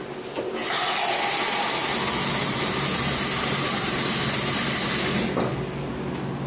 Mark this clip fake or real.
real